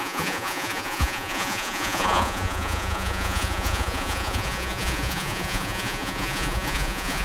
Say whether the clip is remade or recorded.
remade